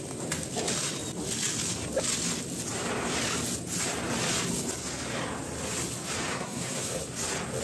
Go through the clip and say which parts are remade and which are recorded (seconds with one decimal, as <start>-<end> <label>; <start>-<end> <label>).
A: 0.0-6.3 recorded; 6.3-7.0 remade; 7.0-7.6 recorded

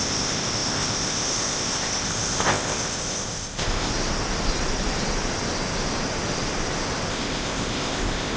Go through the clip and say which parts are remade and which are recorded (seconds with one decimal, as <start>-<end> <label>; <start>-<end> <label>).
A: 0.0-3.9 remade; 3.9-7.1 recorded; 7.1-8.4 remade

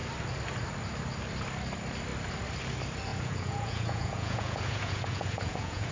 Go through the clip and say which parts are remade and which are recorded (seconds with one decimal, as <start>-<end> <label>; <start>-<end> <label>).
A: 0.0-3.1 recorded; 3.1-5.9 remade

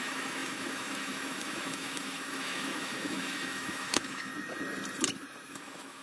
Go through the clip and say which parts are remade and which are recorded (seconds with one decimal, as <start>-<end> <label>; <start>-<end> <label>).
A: 0.0-4.3 remade; 4.3-5.5 recorded; 5.5-6.0 remade